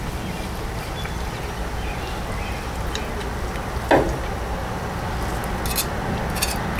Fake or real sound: real